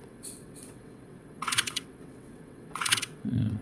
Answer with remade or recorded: remade